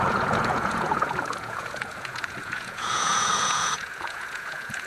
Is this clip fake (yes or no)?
yes